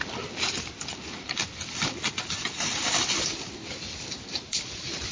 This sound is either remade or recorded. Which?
recorded